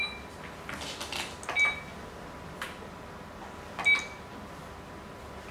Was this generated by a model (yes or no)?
no